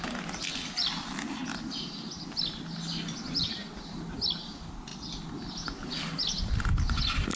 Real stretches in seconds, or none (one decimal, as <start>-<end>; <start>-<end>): 0.0-7.4